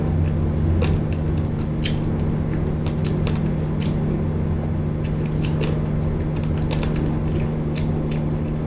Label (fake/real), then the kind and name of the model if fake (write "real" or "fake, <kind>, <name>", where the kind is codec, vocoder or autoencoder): real